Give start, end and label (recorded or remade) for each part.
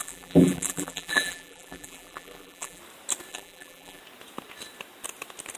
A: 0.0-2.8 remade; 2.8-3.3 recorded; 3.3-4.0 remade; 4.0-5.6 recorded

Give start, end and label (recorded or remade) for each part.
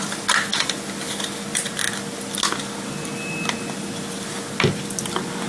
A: 0.0-5.5 recorded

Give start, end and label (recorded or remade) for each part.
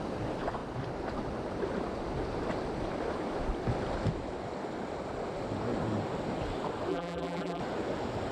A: 0.0-6.9 recorded; 6.9-7.6 remade; 7.6-8.3 recorded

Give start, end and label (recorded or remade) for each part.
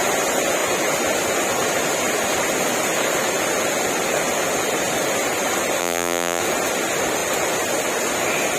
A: 0.0-5.8 recorded; 5.8-6.4 remade; 6.4-8.6 recorded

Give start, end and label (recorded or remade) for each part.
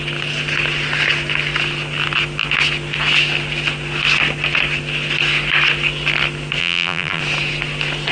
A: 0.0-6.6 recorded; 6.6-7.2 remade; 7.2-8.1 recorded